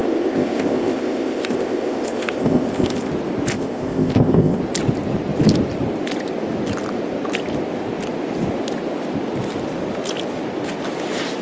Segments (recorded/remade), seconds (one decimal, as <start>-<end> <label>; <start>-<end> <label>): 0.0-3.1 remade; 3.1-3.5 recorded; 3.5-4.6 remade; 4.6-11.4 recorded